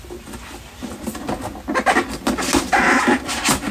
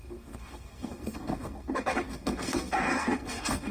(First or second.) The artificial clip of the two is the second